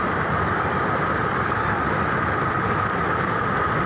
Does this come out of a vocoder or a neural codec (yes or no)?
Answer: no